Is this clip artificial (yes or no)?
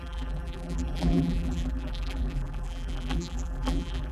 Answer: yes